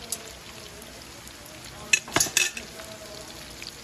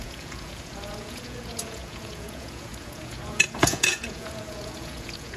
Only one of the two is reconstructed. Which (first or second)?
second